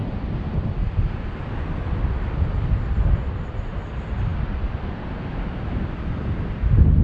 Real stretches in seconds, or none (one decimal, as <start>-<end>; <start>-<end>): 4.3-6.5

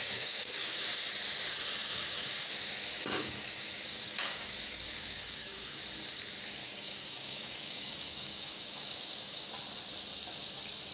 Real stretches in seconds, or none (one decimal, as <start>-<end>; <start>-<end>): 0.8-1.9; 2.5-3.1; 5.8-6.6; 9.5-10.9

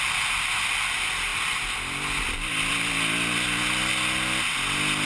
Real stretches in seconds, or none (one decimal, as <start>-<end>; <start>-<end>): 0.0-5.1

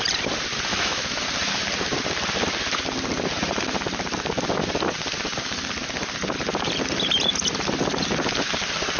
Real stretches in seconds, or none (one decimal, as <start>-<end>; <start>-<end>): 0.0-0.7; 1.2-9.0

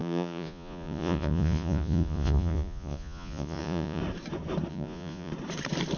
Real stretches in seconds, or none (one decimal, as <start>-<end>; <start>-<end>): 4.0-4.7; 5.3-6.0